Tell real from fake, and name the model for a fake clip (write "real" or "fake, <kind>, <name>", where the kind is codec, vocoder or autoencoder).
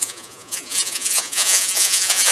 fake, vocoder, Vocos